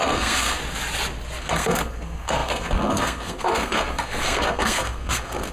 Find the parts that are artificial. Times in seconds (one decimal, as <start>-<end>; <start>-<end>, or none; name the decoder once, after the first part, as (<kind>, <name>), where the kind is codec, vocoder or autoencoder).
0.0-0.6 (codec, SNAC); 1.4-5.5